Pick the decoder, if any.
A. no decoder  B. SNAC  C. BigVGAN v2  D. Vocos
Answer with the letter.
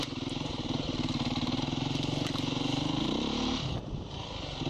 C